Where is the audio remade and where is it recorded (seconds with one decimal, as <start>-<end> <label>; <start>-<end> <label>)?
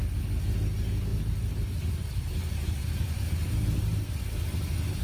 0.0-1.1 recorded; 1.1-4.1 remade; 4.1-5.0 recorded